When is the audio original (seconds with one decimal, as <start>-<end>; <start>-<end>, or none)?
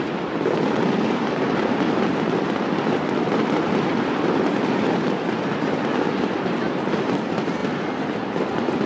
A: 0.0-8.9